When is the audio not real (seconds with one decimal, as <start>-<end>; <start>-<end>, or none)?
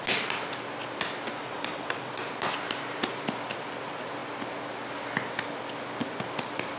1.4-2.1